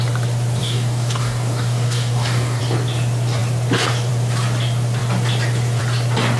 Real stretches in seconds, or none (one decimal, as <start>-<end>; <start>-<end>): 0.0-0.6; 2.6-6.4